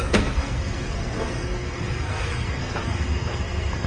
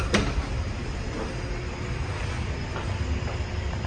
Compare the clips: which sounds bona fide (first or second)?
second